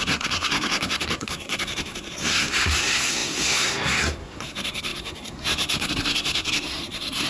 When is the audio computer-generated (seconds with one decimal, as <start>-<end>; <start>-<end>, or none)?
0.0-7.3